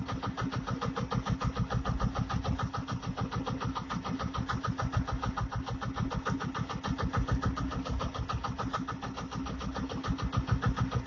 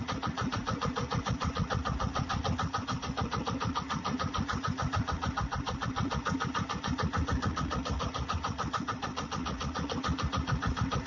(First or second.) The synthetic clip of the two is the second